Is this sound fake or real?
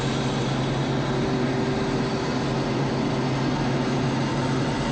real